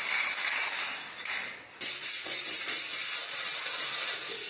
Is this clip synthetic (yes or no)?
no